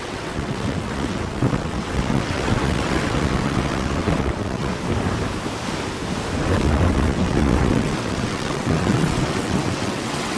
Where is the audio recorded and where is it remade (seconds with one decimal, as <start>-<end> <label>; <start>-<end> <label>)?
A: 0.0-4.7 remade; 4.7-6.4 recorded; 6.4-10.4 remade